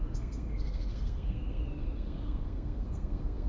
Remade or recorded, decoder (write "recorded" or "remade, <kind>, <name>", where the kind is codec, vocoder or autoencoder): remade, codec, SNAC